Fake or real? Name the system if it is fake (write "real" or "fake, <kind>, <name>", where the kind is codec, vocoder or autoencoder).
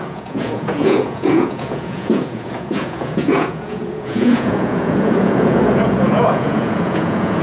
fake, vocoder, Vocos